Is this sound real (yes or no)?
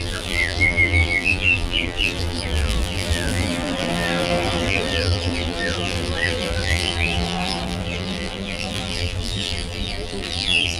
no